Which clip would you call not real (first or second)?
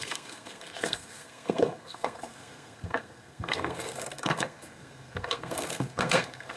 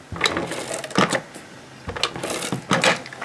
first